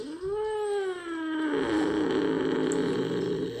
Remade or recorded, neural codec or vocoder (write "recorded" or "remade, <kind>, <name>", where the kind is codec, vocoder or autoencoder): recorded